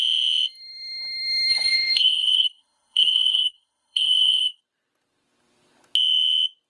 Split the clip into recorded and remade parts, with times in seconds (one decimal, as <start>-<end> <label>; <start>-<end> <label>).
0.0-1.5 recorded; 1.5-4.6 remade; 4.6-6.7 recorded